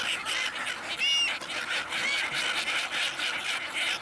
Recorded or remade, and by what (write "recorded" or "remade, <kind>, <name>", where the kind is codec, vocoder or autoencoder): recorded